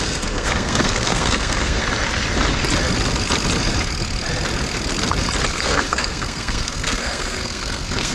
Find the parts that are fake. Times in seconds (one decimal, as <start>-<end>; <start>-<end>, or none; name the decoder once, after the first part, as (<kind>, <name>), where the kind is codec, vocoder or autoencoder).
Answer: 0.0-1.8 (codec, SNAC); 5.5-8.1